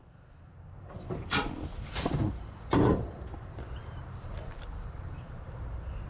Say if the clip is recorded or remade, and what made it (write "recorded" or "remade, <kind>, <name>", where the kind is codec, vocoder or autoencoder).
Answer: remade, vocoder, BigVGAN v2